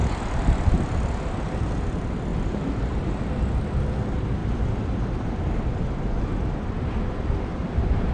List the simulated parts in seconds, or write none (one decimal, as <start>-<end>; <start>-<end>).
0.0-0.7; 2.3-3.1; 4.4-6.2

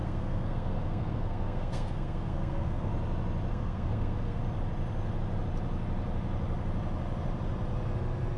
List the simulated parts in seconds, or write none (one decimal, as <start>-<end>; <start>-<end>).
0.0-2.9; 3.5-4.4

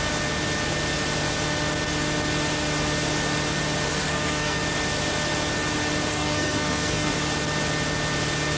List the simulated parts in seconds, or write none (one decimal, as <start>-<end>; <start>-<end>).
3.9-4.6; 6.1-7.1

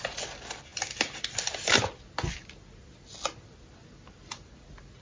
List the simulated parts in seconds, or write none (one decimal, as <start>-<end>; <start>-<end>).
none

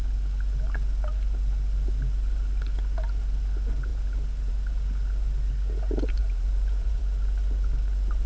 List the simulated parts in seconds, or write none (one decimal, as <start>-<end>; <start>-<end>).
6.2-7.0

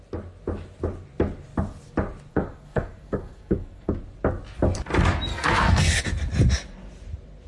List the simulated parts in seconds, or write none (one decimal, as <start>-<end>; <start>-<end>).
2.3-3.9; 5.3-6.0